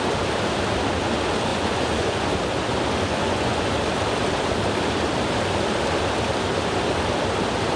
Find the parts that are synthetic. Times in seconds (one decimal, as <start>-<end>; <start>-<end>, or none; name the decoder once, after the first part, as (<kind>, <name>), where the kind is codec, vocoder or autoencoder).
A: 1.5-2.3 (vocoder, Vocos); 3.1-3.7